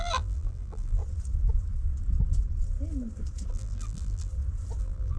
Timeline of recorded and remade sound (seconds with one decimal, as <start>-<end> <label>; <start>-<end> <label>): 0.0-1.0 remade; 1.0-3.5 recorded; 3.5-4.3 remade; 4.3-4.8 recorded; 4.8-5.2 remade